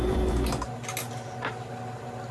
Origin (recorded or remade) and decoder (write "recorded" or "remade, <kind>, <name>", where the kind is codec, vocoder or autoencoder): recorded